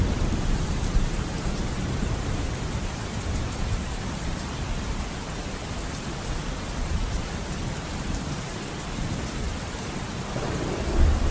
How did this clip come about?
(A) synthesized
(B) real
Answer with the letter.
A